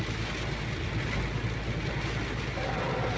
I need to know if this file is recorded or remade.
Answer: recorded